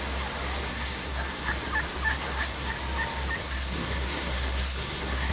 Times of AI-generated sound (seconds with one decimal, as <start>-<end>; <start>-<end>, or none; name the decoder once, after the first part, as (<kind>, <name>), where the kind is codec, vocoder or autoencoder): 0.6-1.5 (codec, SNAC); 2.1-2.7; 3.4-5.3

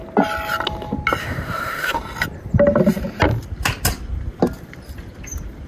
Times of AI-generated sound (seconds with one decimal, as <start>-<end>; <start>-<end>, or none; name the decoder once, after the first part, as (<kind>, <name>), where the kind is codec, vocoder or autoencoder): 1.2-2.0 (autoencoder, DAC-VAE)